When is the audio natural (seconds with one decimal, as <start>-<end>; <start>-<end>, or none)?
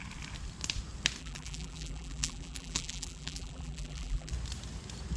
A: 0.0-1.2; 4.3-5.2